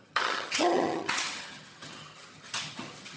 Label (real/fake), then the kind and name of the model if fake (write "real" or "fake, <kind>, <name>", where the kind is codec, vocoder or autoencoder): fake, vocoder, HiFi-GAN